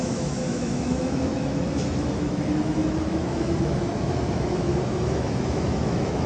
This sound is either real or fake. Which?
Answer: fake